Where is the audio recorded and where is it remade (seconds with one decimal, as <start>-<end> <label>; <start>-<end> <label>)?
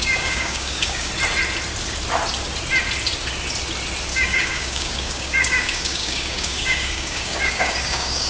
0.0-1.1 remade; 1.1-4.1 recorded; 4.1-8.3 remade